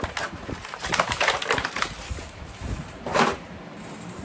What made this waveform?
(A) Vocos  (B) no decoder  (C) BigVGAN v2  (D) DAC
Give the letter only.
C